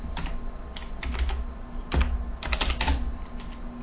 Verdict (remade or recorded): recorded